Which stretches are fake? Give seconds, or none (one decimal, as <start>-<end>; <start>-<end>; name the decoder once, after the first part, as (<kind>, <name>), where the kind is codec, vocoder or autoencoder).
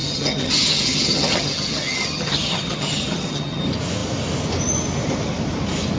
0.0-3.6 (vocoder, HiFi-GAN)